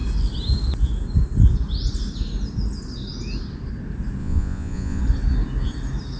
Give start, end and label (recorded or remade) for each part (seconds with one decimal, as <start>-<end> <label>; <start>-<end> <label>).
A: 0.0-4.2 recorded; 4.2-5.0 remade; 5.0-6.2 recorded